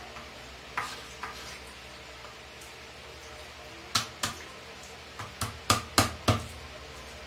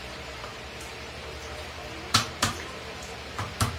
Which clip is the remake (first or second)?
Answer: second